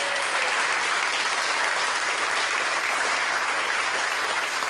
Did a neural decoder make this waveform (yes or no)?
no